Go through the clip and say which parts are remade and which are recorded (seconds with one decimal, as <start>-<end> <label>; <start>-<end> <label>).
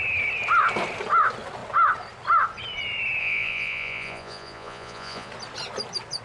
0.0-3.2 recorded; 3.2-5.3 remade; 5.3-6.2 recorded